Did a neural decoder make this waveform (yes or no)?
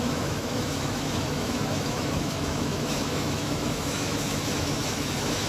yes